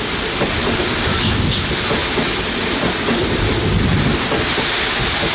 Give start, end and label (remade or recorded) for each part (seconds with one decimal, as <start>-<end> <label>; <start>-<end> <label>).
0.0-5.3 recorded